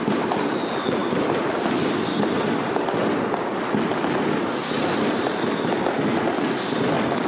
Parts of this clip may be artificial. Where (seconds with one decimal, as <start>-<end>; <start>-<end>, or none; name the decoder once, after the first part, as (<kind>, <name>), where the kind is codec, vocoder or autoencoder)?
none